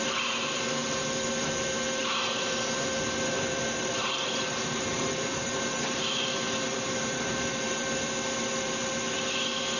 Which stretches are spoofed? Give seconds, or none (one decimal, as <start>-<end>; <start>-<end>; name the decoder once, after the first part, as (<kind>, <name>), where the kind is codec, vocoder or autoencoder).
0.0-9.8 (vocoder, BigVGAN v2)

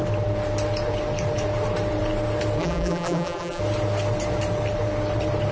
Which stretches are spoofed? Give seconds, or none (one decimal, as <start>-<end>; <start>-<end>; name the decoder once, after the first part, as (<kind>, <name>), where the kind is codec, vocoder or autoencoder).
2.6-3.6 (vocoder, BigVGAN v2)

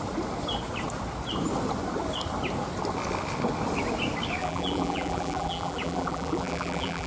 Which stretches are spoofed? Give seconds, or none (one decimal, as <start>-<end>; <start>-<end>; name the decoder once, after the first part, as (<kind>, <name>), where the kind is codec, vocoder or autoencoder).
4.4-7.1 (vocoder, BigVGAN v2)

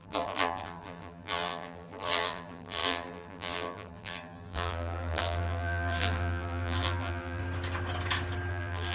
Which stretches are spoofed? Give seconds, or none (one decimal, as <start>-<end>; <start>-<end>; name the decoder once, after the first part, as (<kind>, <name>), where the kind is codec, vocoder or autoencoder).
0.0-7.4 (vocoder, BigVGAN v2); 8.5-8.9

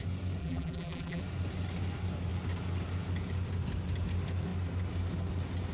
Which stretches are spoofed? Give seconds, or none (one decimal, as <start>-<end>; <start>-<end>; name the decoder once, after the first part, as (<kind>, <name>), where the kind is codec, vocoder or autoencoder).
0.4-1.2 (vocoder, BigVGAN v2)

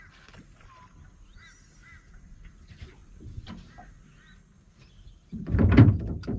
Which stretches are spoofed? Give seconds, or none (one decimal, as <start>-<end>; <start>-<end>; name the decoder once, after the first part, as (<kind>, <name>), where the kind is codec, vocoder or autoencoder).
5.2-5.9 (vocoder, BigVGAN v2)